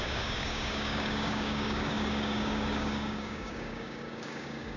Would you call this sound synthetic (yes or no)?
yes